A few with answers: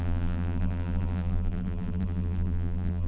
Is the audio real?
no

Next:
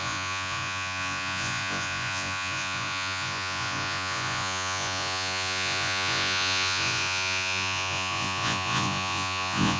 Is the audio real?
no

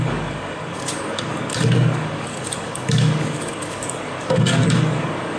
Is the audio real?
no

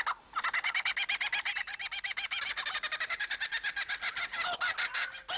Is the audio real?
yes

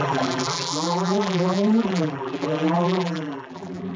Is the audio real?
no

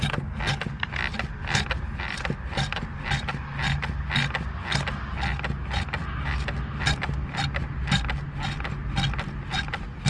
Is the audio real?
yes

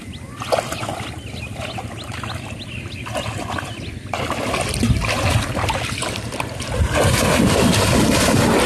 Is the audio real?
yes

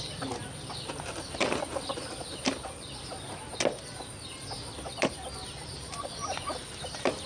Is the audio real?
yes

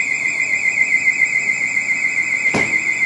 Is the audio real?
no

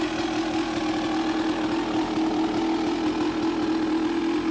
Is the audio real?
yes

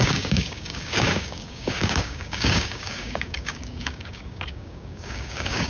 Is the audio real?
no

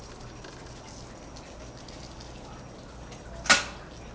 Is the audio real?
yes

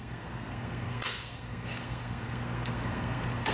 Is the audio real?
no